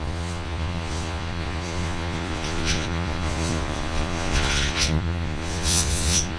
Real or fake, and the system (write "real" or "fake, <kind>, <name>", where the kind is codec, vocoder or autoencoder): fake, vocoder, Vocos